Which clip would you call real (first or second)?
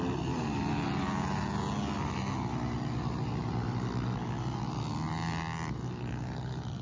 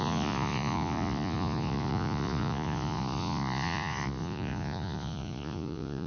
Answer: first